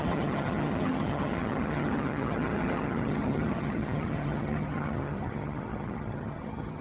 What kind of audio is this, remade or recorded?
remade